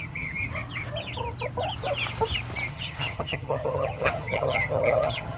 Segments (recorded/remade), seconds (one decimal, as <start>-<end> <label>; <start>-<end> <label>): 0.0-0.4 remade; 0.4-2.7 recorded; 2.7-5.4 remade